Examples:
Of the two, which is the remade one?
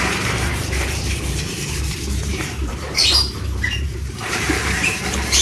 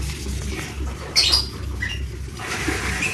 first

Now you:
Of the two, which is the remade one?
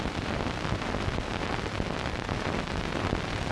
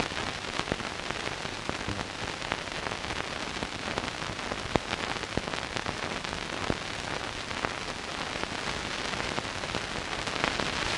first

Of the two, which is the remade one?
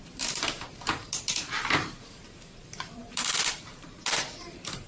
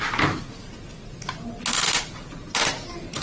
first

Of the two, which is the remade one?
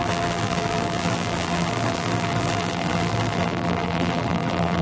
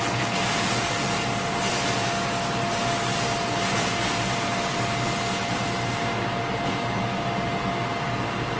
first